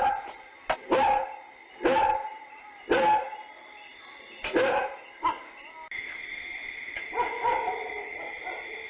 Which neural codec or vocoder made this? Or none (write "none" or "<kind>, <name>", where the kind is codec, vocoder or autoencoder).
none